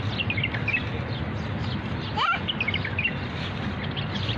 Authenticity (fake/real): real